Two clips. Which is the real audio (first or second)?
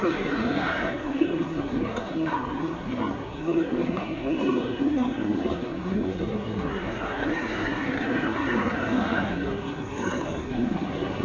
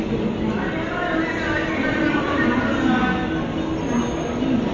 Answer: second